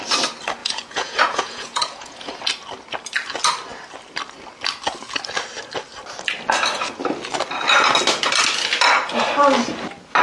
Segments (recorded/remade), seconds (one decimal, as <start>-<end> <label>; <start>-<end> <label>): 0.0-0.6 recorded; 0.6-2.4 remade; 2.4-10.2 recorded